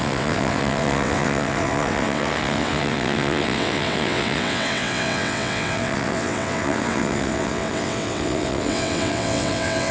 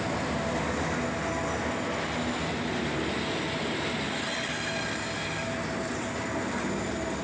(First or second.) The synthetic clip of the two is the first